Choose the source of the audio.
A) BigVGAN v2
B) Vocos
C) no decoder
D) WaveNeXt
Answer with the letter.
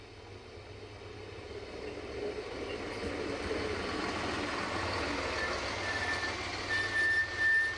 C